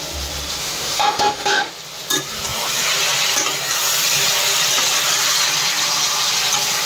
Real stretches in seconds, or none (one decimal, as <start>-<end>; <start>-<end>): 0.0-0.6; 1.7-6.9